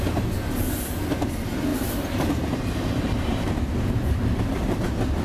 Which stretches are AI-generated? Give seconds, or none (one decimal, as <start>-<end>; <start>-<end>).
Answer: 1.7-4.8